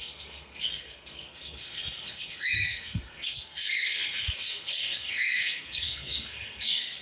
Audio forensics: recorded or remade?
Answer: remade